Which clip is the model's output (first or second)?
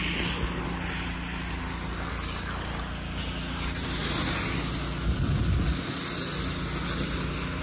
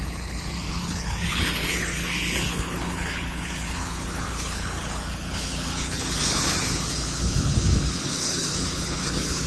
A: second